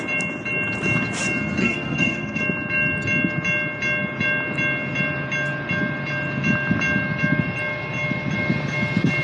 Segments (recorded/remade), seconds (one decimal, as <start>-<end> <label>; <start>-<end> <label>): 0.0-1.6 recorded; 1.6-2.4 remade; 2.4-9.2 recorded